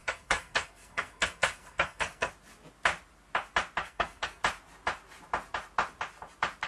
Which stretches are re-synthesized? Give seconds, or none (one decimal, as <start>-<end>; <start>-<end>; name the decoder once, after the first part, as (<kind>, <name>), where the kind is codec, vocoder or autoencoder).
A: 0.0-2.3 (codec, SNAC); 3.8-4.4